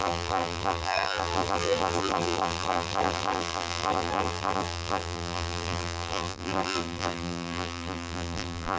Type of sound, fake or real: fake